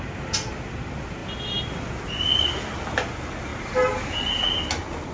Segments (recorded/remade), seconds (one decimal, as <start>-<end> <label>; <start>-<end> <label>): 0.0-5.1 recorded